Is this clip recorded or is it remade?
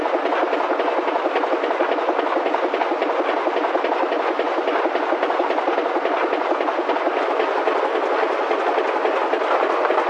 recorded